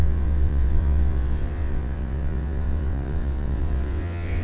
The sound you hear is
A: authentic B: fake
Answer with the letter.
B